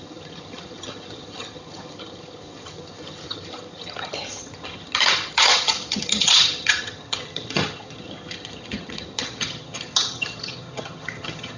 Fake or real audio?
fake